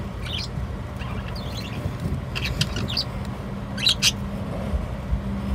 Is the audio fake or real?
real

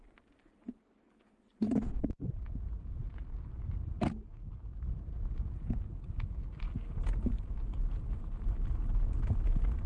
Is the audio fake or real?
real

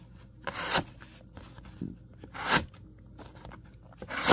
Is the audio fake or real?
real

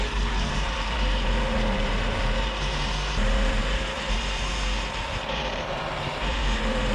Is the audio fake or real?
fake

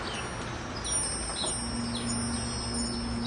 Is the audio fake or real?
real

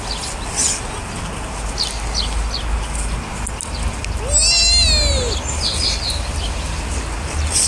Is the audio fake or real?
real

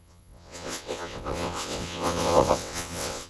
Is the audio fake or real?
fake